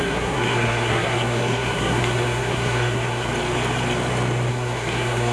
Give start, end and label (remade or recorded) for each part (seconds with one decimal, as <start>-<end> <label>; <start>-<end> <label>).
0.0-3.3 remade; 3.3-4.5 recorded; 4.5-5.3 remade